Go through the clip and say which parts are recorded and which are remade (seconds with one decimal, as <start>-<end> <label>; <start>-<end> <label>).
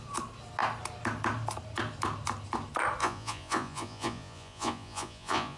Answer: 0.0-3.0 recorded; 3.0-5.6 remade